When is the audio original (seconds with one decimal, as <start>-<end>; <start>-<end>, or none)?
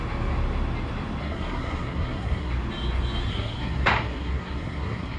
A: 0.0-1.2; 2.5-3.3